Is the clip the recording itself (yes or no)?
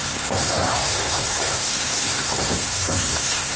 no